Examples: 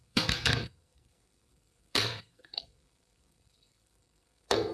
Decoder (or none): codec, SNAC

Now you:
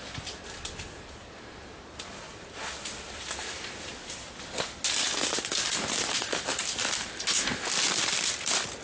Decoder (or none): none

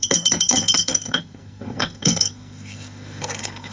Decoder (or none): codec, SNAC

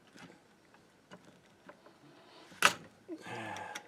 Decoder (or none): none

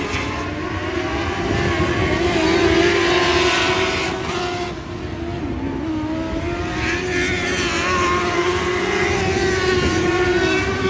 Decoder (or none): none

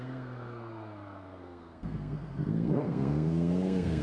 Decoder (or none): codec, SNAC